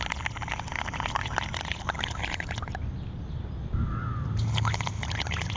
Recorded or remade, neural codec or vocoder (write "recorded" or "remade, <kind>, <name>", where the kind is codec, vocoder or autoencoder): recorded